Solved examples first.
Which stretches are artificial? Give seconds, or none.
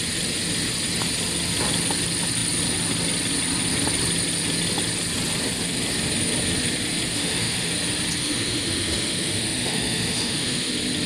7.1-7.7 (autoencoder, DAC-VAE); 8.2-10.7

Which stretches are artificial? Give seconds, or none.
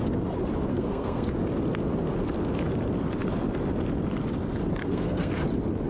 0.7-1.3 (codec, SNAC); 4.8-5.3